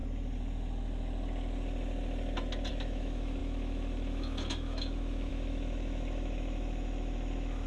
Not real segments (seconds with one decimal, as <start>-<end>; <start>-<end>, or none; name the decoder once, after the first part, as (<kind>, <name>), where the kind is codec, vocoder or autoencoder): 2.7-7.7 (autoencoder, DAC-VAE)